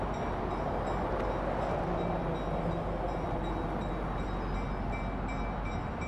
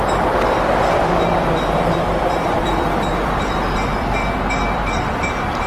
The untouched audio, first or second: first